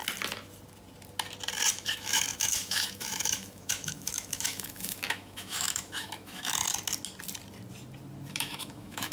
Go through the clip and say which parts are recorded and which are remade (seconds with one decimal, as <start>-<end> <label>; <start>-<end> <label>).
0.0-1.7 recorded; 1.7-6.6 remade; 6.6-8.3 recorded; 8.3-9.1 remade